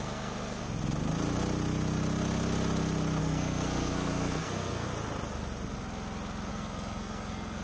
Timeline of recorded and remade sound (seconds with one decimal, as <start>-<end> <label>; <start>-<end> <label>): 0.0-0.6 remade; 0.6-3.2 recorded; 3.2-4.9 remade; 4.9-6.5 recorded; 6.5-7.6 remade

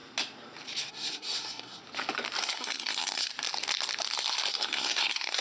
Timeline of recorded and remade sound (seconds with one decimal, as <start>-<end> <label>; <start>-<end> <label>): 0.0-0.9 recorded; 0.9-1.8 remade; 1.8-2.4 recorded; 2.4-3.3 remade; 3.3-4.5 recorded; 4.5-5.4 remade

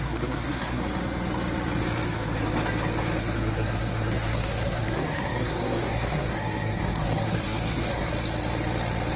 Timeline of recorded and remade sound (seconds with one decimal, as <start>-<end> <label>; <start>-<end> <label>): 0.0-0.8 remade; 0.8-3.2 recorded; 3.2-8.1 remade; 8.1-9.2 recorded

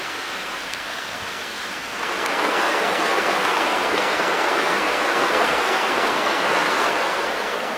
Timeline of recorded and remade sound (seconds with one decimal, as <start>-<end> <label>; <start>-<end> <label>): 0.0-7.8 remade

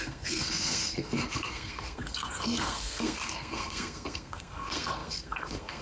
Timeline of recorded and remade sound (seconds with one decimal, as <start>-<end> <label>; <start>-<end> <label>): 0.0-5.8 remade

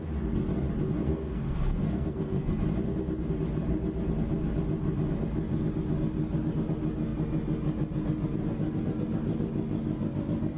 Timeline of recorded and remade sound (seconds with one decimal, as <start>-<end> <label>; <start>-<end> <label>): 0.0-1.0 recorded; 1.0-2.5 remade; 2.5-10.6 recorded

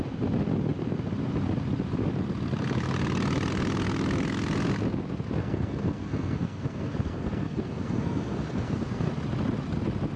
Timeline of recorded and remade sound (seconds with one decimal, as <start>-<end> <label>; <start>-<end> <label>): 0.0-5.4 recorded; 5.4-9.1 remade; 9.1-10.2 recorded

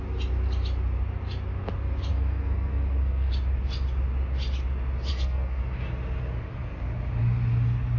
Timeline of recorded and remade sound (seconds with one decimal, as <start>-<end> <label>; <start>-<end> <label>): 0.0-2.1 recorded; 2.1-3.3 remade; 3.3-5.1 recorded; 5.1-5.6 remade; 5.6-8.0 recorded